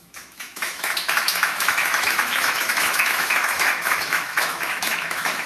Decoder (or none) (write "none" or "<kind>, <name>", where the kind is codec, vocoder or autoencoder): autoencoder, DAC-VAE